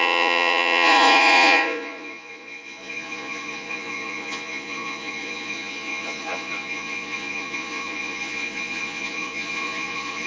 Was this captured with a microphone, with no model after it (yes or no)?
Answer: no